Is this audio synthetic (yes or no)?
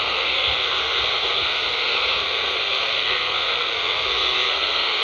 yes